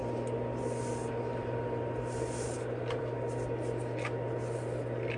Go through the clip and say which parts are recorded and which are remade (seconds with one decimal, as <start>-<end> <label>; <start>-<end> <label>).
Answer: 0.0-5.2 recorded